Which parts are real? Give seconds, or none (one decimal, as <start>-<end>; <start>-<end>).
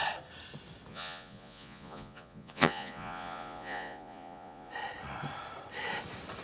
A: 0.0-0.9; 4.7-6.4